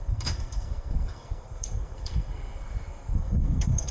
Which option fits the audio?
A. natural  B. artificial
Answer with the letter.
B